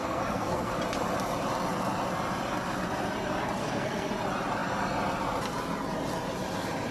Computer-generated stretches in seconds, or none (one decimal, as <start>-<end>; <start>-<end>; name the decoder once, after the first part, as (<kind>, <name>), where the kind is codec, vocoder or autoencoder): 0.0-0.8 (codec, SNAC); 3.6-4.1